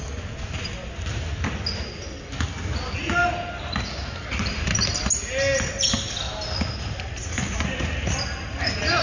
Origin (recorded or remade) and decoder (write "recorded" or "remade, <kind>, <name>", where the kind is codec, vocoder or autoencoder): recorded